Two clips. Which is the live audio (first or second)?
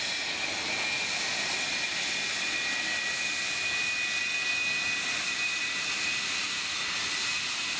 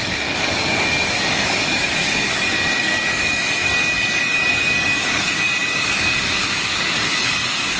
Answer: first